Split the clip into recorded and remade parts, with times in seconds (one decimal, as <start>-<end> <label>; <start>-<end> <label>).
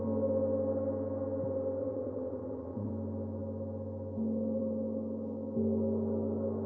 0.0-1.8 recorded; 1.8-2.9 remade; 2.9-6.7 recorded